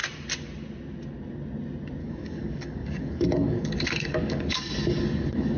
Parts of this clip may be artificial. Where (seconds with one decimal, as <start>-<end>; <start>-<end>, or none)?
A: 2.0-5.6